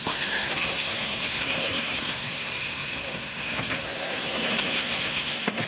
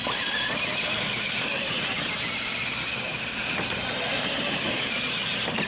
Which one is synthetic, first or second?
first